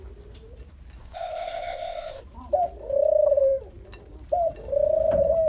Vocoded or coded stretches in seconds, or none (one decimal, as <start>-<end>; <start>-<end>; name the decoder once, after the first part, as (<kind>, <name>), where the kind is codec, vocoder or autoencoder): 1.0-2.2 (codec, ZipCodec)